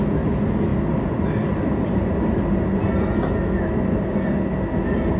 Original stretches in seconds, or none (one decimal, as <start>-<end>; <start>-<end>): 0.0-5.2